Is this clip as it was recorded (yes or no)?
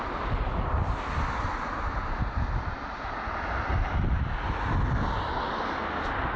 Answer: yes